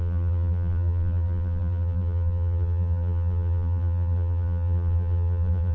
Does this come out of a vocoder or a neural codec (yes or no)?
yes